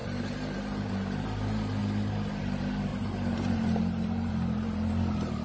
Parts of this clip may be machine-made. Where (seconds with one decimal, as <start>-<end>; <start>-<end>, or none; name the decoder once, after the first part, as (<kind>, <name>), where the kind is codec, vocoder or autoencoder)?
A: 0.0-0.9 (vocoder, BigVGAN v2); 2.9-4.3